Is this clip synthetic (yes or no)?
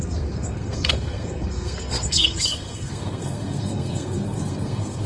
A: yes